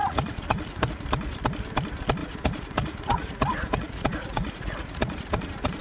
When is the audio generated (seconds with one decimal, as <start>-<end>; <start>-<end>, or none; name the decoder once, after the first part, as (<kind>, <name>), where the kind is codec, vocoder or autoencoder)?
0.0-0.9 (vocoder, Vocos); 2.2-5.8